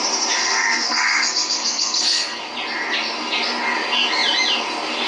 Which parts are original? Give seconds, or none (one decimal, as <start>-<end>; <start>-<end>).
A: 0.0-0.4; 2.4-5.1